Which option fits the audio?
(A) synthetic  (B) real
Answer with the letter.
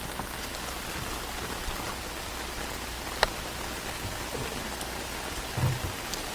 B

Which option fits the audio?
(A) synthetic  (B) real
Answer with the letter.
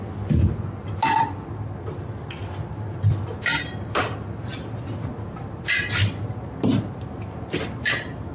B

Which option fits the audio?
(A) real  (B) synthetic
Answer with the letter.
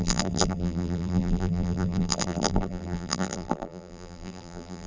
B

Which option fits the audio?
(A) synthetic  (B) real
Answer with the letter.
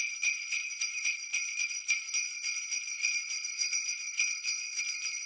A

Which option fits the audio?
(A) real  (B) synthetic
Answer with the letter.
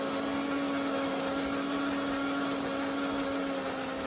A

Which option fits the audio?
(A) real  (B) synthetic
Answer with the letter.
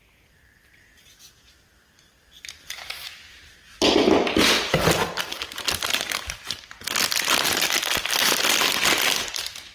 B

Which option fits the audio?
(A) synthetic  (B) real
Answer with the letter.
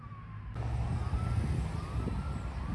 B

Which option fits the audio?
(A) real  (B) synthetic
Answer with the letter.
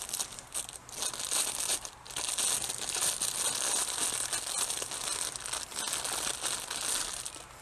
A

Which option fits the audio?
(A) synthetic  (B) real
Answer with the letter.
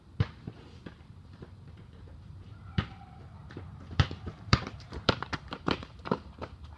A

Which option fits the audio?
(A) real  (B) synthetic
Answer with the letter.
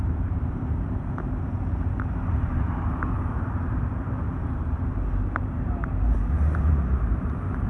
B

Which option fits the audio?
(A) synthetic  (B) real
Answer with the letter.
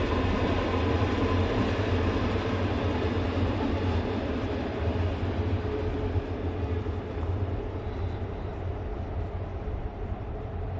B